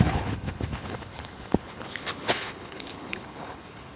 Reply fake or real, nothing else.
fake